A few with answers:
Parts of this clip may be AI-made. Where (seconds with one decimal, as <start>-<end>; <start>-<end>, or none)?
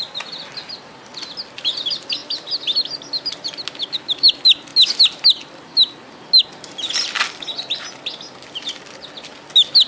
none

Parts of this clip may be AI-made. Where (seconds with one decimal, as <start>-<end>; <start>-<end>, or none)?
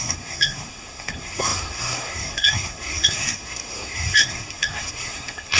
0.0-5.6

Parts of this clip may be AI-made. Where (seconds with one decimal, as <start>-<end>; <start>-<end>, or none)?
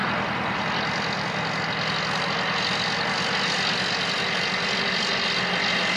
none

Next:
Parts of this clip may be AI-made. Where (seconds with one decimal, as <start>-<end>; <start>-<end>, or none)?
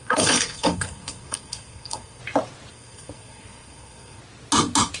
0.0-2.2; 2.7-4.2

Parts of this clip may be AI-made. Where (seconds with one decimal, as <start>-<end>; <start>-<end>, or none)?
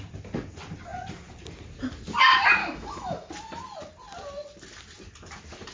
2.6-3.3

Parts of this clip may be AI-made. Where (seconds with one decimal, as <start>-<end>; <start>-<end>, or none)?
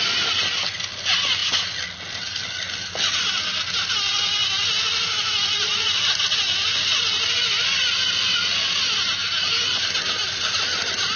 none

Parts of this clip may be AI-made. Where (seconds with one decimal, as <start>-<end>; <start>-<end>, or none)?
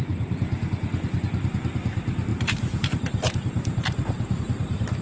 2.3-4.4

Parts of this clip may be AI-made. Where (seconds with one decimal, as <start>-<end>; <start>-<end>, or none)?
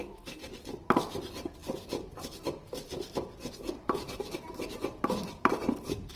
none